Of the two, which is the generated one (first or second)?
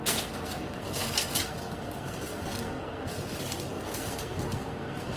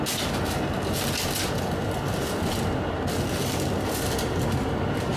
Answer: first